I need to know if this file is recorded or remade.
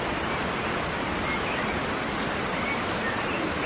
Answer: remade